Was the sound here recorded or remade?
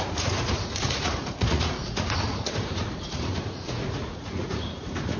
remade